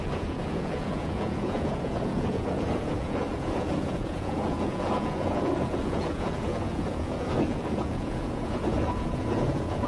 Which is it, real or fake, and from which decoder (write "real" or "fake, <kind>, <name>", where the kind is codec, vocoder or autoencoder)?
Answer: fake, vocoder, Vocos